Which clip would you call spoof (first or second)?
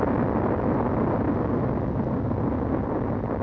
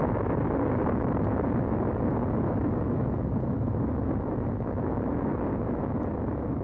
second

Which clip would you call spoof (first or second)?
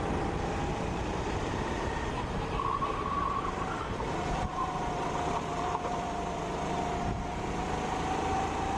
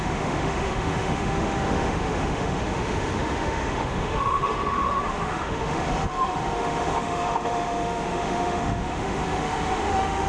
second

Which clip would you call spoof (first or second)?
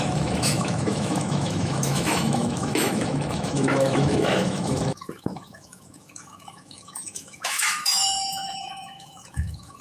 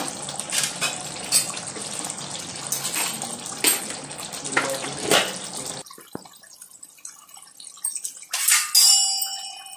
first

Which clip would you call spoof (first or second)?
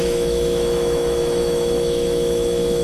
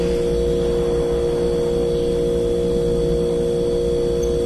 first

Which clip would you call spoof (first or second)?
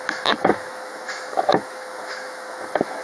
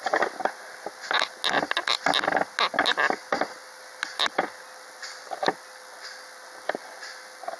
first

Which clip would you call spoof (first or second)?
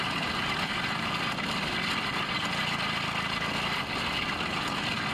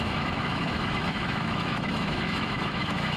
second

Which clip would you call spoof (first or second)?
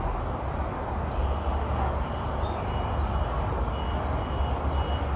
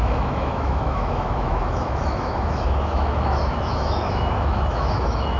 second